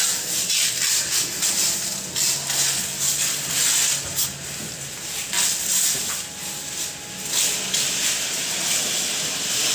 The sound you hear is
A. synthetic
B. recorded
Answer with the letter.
B